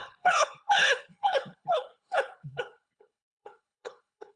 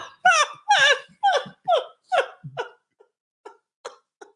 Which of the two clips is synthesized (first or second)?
first